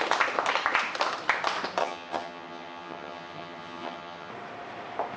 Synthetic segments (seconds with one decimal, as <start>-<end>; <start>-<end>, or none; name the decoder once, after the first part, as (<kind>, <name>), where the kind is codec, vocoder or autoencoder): 1.8-4.3 (vocoder, HiFi-GAN)